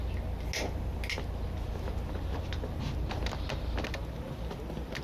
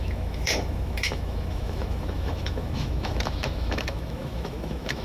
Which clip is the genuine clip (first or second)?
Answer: first